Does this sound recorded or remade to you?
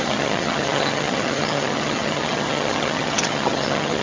remade